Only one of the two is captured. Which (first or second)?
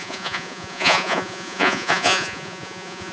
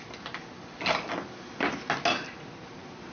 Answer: second